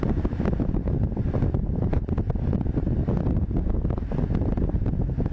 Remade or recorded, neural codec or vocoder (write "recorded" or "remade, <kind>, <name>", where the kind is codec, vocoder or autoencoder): recorded